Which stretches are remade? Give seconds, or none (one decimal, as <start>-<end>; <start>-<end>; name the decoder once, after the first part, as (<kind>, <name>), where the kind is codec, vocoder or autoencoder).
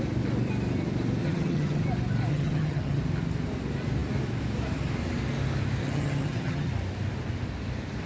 1.2-1.8 (vocoder, HiFi-GAN); 2.3-3.0; 5.8-6.7